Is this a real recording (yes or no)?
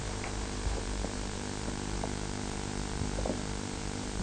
no